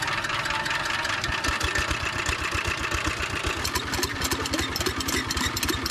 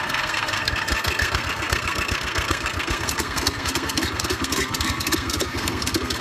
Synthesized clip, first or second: second